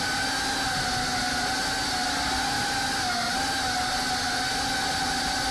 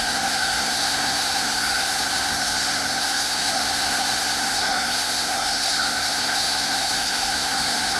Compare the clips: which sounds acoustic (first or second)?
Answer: first